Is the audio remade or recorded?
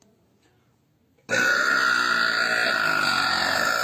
recorded